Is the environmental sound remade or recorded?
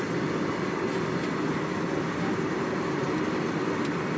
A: recorded